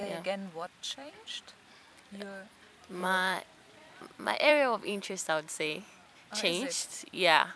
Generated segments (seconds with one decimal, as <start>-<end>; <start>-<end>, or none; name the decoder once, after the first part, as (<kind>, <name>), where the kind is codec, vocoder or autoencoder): 0.0-1.1 (vocoder, BigVGAN v2); 3.0-6.3